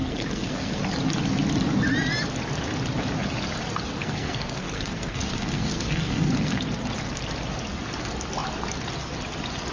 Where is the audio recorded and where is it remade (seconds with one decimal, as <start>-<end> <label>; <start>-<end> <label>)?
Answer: 0.0-0.8 remade; 0.8-4.0 recorded; 4.0-6.6 remade; 6.6-9.7 recorded